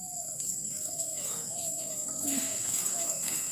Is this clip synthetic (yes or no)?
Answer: yes